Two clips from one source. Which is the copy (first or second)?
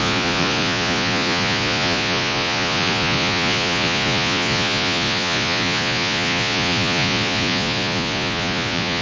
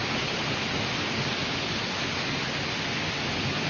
first